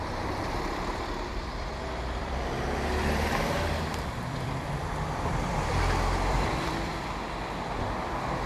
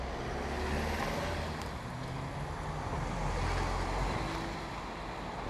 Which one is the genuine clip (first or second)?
second